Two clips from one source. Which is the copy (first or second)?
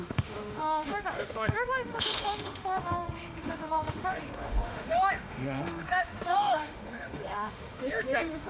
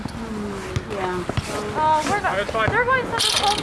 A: first